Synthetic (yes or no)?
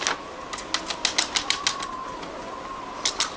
no